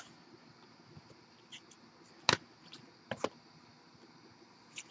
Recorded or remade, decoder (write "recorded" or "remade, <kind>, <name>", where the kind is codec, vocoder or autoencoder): recorded